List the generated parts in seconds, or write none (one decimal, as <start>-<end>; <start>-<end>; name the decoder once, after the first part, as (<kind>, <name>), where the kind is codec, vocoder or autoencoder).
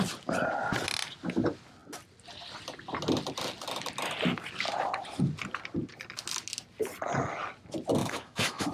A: 8.0-8.7 (autoencoder, DAC-VAE)